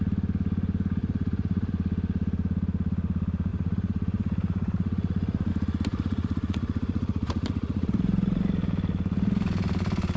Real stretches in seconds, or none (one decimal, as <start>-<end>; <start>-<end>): 0.0-1.0; 1.7-3.5; 5.5-5.9; 8.4-10.2